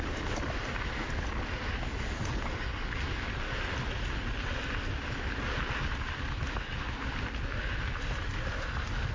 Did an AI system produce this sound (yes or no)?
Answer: no